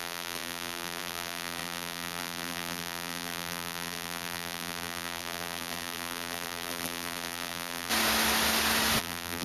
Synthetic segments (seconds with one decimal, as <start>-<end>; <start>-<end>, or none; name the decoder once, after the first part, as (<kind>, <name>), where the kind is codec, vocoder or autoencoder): 0.0-7.9 (vocoder, BigVGAN v2); 9.0-9.4